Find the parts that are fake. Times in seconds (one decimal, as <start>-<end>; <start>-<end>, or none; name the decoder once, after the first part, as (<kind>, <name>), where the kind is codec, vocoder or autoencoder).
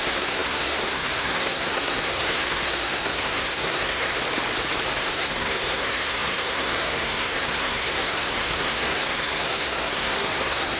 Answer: 0.0-4.1 (codec, SNAC); 5.0-10.8